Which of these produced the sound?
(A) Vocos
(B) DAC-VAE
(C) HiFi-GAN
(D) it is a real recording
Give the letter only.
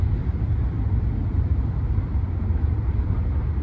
D